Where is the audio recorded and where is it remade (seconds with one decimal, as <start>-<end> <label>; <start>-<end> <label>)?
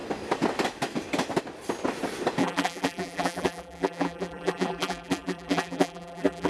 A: 0.0-2.4 recorded; 2.4-6.5 remade